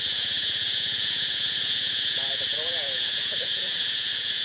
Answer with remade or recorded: remade